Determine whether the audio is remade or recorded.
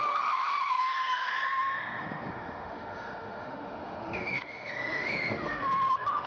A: remade